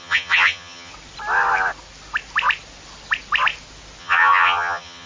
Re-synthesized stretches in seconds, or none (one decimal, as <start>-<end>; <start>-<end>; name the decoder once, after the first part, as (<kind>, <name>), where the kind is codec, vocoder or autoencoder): 0.0-0.9 (vocoder, HiFi-GAN); 4.0-5.1